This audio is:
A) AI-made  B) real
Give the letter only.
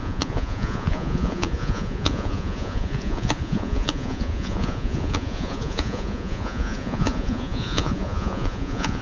A